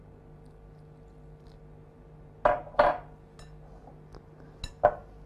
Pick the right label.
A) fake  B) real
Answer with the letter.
B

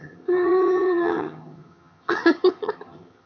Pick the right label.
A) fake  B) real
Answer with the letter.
A